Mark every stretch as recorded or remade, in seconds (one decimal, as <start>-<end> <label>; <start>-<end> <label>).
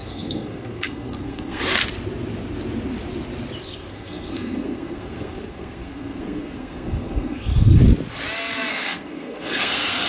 0.0-1.6 remade; 1.6-3.6 recorded; 3.6-7.8 remade; 7.8-8.7 recorded; 8.7-10.1 remade